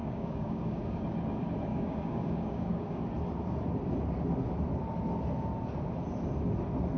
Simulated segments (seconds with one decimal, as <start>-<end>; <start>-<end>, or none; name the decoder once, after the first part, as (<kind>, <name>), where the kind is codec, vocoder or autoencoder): 0.0-1.0 (codec, DAC); 1.7-3.0